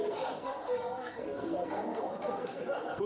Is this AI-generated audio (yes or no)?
yes